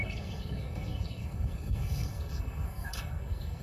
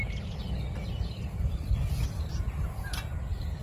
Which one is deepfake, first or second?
first